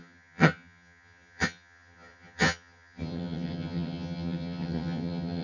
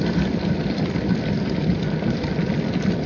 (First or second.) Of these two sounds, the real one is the second